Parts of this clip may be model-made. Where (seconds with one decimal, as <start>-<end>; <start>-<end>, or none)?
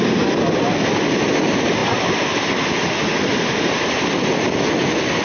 none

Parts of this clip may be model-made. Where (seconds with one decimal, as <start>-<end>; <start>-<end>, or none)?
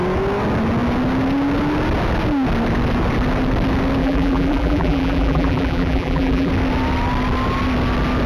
4.0-6.5